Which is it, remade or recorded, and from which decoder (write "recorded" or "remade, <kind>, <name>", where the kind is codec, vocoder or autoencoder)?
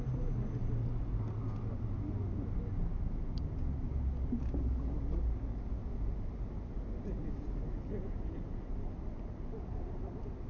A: recorded